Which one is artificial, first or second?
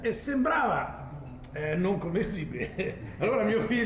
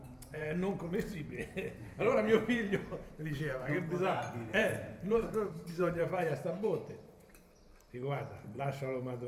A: second